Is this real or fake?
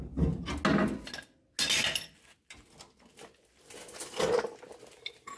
real